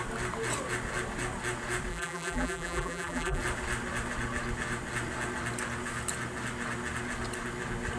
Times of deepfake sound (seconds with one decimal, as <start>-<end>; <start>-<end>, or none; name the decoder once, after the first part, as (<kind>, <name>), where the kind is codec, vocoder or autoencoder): 1.9-3.4 (vocoder, BigVGAN v2)